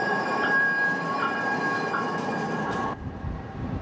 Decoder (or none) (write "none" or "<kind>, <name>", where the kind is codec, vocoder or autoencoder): vocoder, BigVGAN v2